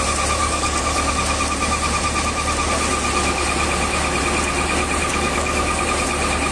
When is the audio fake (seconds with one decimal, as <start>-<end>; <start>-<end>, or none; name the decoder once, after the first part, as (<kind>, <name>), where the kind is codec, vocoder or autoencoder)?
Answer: 0.4-1.1 (codec, DAC); 5.1-5.8